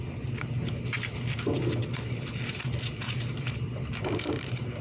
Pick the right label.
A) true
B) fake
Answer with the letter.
A